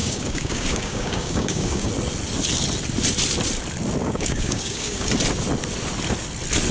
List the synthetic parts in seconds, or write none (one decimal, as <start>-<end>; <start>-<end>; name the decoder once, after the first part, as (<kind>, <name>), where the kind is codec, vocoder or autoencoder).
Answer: 0.0-1.9 (codec, DAC); 4.0-5.1